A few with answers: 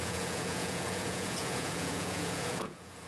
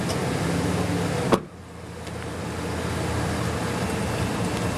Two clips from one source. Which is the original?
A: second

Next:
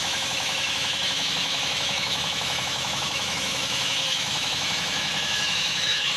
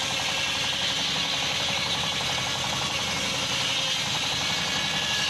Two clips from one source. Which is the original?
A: second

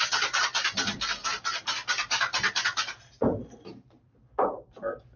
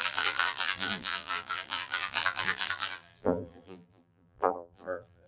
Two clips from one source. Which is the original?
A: first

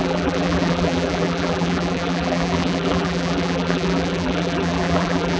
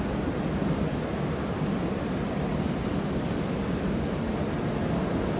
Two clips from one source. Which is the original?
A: second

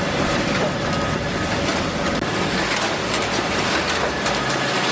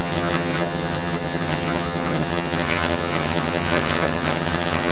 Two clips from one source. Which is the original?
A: first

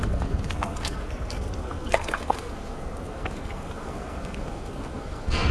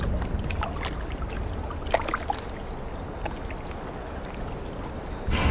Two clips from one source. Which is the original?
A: second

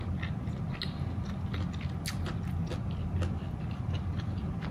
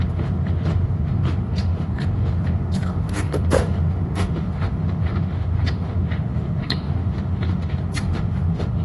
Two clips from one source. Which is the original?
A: first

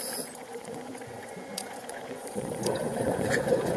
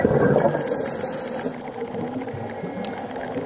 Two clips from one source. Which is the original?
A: second